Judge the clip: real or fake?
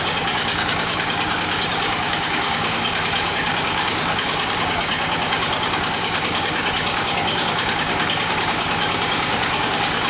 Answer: fake